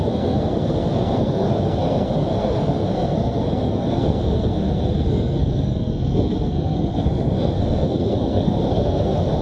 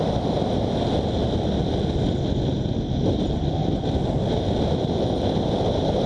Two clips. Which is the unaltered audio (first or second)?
second